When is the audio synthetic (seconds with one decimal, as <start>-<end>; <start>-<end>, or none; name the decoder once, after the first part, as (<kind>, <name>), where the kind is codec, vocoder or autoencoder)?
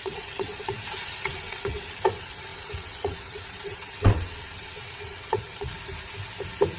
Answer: 0.0-5.7 (vocoder, WaveNeXt)